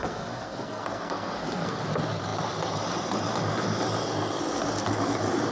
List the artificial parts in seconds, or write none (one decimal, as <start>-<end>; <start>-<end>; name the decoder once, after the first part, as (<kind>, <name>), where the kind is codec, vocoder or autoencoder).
0.0-1.8 (codec, SNAC)